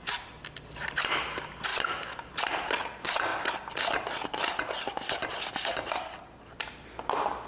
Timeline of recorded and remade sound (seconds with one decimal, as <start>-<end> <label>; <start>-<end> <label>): 0.0-7.5 recorded